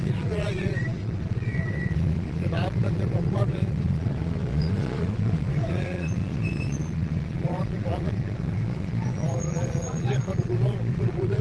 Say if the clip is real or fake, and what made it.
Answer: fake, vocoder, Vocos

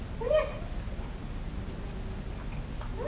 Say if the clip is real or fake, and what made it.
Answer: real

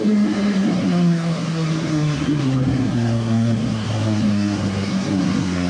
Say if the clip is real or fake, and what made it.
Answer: fake, codec, SNAC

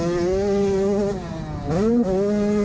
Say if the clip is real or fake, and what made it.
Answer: real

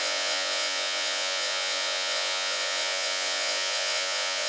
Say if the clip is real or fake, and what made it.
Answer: fake, vocoder, Vocos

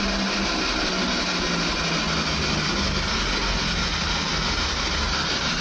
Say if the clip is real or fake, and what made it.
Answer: real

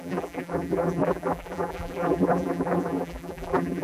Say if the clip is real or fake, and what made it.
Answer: fake, vocoder, BigVGAN v2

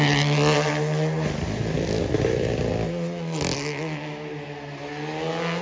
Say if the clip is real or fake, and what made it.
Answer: real